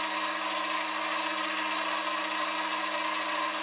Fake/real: real